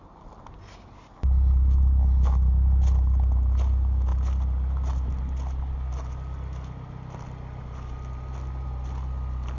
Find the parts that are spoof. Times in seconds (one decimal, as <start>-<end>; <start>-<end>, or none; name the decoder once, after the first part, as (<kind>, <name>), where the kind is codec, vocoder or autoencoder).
none